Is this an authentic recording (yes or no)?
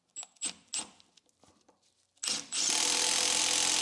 yes